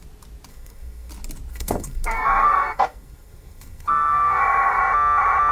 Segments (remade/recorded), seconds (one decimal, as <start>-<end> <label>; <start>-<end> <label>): 0.0-0.5 recorded; 0.5-1.1 remade; 1.1-1.5 recorded; 1.5-4.8 remade; 4.8-5.5 recorded